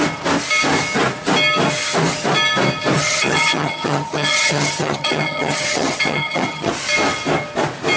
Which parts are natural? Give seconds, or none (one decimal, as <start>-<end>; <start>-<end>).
0.0-3.0; 6.7-8.0